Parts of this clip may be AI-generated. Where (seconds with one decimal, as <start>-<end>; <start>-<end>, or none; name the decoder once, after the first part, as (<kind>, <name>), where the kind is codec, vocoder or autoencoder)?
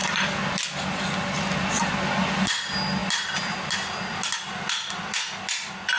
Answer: none